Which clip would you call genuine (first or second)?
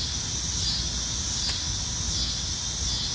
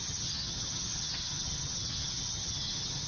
first